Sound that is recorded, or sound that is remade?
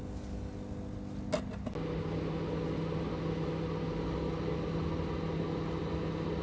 recorded